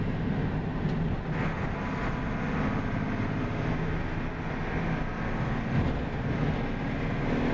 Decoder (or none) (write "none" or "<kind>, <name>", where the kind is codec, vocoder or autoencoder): none